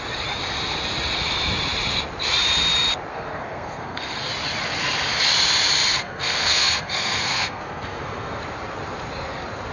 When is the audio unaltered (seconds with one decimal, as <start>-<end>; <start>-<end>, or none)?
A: 0.0-3.1; 4.3-6.0; 8.4-9.7